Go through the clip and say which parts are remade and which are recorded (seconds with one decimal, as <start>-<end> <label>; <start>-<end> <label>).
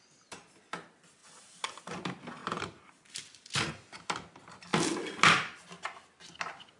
0.0-6.8 recorded